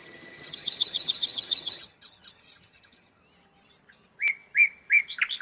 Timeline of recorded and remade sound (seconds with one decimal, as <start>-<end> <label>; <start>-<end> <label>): 0.0-3.2 remade; 3.2-5.4 recorded